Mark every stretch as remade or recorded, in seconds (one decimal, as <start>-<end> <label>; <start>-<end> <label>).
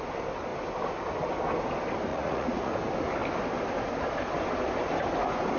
0.0-2.1 recorded; 2.1-2.7 remade; 2.7-5.6 recorded